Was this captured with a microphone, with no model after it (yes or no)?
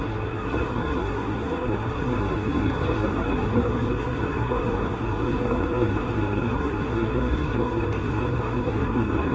no